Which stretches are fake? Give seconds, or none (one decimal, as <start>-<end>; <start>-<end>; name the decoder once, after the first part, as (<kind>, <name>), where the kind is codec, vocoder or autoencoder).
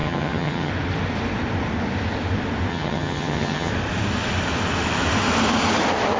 0.0-0.7 (vocoder, HiFi-GAN); 2.7-3.7